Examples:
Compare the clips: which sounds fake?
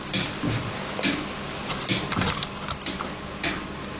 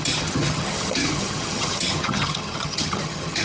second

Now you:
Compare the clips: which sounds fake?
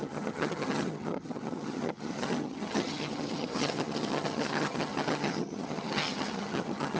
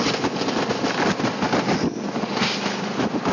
first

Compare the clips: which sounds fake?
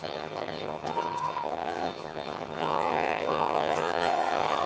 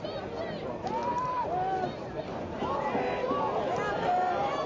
first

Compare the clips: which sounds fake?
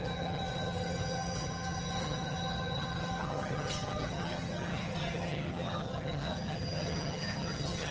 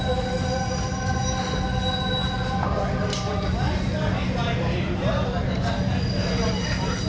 first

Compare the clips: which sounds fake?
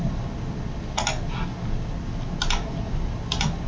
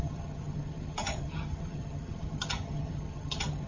second